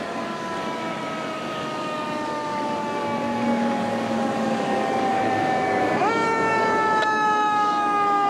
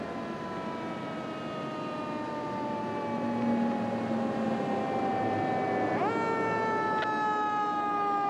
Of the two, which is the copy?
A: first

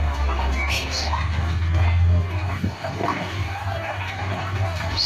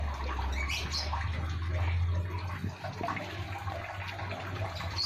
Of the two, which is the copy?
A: first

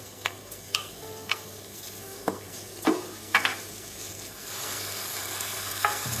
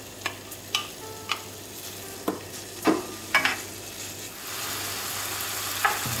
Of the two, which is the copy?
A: first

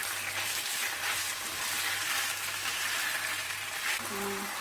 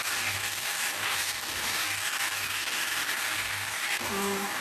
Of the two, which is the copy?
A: second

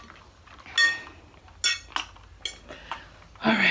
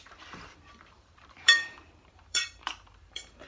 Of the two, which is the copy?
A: second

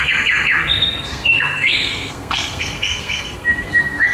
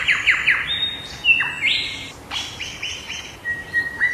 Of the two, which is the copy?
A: first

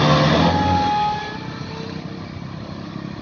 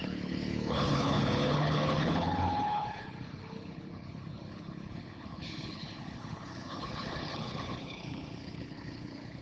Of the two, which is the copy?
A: second